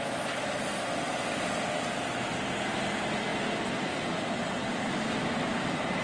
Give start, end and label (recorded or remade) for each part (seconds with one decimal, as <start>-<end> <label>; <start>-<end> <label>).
0.0-6.0 recorded